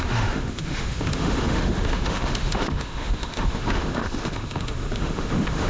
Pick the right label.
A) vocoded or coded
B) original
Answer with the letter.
A